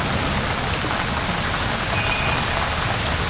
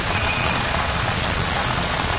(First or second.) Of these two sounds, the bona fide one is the first